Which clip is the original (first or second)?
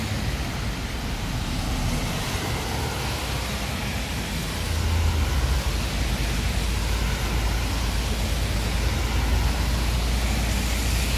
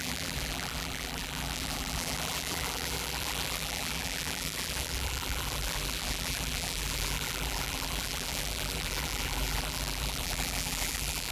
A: first